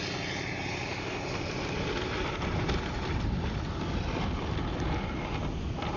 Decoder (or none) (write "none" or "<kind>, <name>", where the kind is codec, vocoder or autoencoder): none